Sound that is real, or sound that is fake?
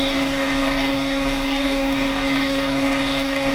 fake